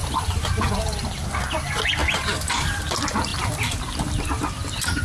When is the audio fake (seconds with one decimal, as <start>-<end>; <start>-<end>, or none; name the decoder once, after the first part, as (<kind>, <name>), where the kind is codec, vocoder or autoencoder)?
0.0-0.6 (vocoder, BigVGAN v2)